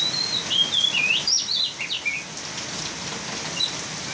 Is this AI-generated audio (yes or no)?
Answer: no